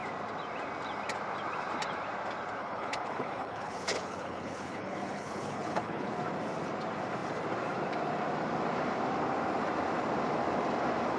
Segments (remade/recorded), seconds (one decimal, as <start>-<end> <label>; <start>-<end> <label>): 0.0-2.6 recorded; 2.6-6.1 remade; 6.1-11.2 recorded